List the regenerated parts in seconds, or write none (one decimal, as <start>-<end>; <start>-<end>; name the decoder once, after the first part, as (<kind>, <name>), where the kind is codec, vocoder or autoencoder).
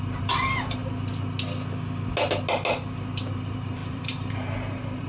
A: 0.0-0.8 (vocoder, BigVGAN v2); 3.3-5.1